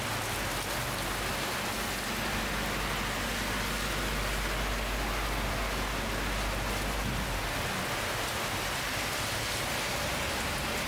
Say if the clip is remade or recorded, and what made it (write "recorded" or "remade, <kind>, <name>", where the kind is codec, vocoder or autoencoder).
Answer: recorded